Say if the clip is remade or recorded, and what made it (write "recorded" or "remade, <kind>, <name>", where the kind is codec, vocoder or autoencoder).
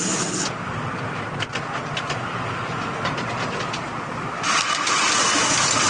recorded